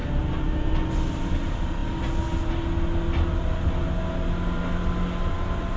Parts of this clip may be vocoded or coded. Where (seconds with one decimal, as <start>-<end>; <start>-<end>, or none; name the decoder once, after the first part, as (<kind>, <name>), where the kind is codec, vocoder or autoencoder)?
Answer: none